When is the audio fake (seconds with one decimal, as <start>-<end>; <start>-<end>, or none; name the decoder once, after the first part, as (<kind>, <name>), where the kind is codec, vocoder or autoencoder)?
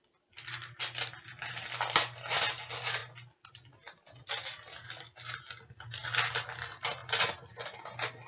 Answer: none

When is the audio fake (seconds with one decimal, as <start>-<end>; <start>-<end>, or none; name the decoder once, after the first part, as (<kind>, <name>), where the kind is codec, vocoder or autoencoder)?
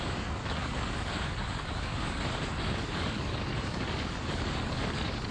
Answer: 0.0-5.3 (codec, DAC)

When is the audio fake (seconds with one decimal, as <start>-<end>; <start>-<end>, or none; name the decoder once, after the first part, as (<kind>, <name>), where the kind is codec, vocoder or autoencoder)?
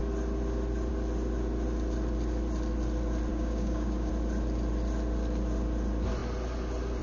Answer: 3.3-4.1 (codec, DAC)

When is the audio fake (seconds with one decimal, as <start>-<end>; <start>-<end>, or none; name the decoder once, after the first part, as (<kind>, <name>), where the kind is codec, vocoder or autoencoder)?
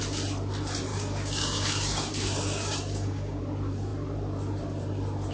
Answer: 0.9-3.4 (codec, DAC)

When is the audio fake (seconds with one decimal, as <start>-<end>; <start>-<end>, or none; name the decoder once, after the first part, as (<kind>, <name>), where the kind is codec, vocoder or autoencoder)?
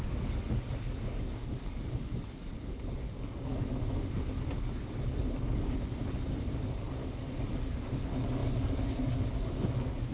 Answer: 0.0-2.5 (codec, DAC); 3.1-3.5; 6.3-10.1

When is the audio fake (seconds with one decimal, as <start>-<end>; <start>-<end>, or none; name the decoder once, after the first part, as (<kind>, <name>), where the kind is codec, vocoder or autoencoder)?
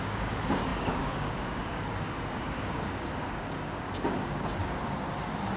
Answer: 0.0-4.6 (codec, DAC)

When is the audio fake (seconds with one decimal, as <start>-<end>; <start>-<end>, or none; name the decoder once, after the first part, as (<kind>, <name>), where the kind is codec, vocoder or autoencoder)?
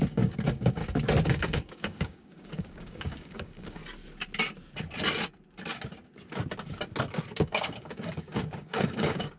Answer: 0.0-0.8 (codec, DAC); 1.3-3.8; 7.2-9.4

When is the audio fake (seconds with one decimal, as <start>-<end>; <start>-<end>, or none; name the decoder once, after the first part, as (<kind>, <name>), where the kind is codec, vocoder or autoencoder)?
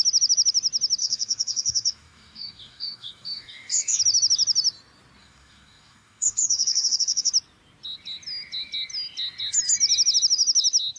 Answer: 1.0-4.0 (codec, DAC); 5.2-7.3